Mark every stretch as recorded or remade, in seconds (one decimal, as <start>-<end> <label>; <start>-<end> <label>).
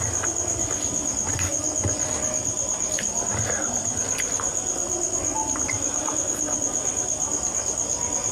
0.0-8.3 recorded